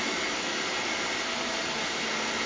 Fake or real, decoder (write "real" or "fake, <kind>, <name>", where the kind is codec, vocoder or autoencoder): real